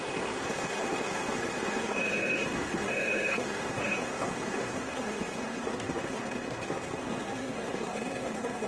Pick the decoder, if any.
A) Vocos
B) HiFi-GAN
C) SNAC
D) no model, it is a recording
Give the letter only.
C